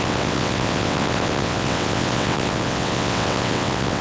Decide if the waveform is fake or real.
fake